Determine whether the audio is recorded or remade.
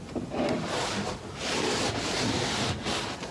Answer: recorded